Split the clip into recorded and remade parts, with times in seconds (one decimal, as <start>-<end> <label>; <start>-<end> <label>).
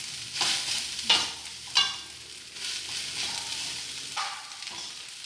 0.0-5.3 recorded